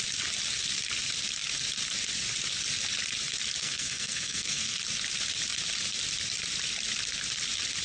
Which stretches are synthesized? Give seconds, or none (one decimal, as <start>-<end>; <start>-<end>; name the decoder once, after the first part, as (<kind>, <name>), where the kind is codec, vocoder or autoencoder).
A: 3.6-4.8 (codec, SNAC)